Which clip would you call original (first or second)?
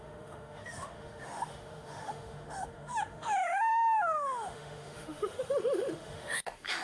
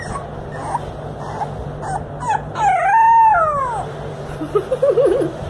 second